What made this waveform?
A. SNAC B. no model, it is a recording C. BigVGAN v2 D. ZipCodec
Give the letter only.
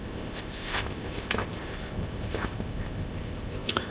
D